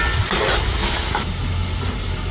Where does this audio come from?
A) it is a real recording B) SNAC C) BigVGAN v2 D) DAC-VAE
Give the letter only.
A